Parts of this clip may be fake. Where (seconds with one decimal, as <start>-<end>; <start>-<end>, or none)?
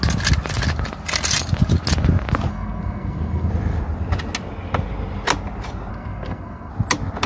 2.5-3.5; 5.9-6.7